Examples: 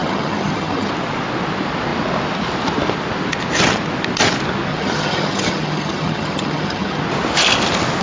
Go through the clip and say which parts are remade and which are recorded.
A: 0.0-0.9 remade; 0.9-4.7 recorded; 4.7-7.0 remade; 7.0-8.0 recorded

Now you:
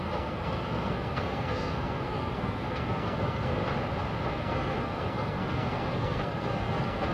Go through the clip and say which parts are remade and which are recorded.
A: 0.0-3.6 remade; 3.6-4.3 recorded; 4.3-7.1 remade

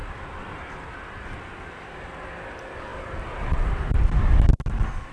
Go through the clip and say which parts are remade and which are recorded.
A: 0.0-5.1 recorded